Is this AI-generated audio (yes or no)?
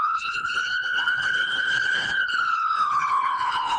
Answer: yes